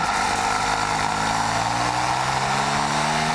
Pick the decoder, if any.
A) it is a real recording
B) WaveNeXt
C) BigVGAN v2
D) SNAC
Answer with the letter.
A